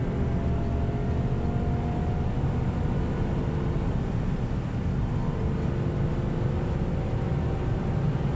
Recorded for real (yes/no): yes